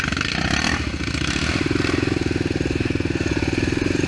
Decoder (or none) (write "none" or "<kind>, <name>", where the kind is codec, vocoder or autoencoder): none